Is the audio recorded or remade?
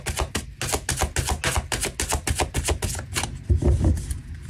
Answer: recorded